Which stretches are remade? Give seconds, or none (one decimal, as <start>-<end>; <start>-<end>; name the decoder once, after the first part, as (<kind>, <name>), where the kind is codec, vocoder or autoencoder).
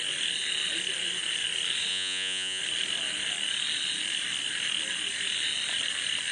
1.9-2.6 (vocoder, Vocos)